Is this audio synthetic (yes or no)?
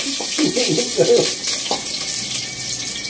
yes